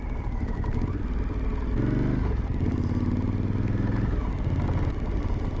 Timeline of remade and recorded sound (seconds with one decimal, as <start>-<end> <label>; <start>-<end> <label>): 0.0-5.6 recorded